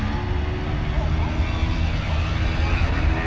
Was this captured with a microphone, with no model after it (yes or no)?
yes